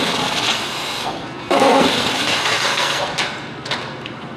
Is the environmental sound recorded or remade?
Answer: remade